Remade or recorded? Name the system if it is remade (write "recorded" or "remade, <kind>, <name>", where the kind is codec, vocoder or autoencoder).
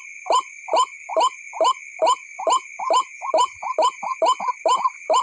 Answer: remade, vocoder, BigVGAN v2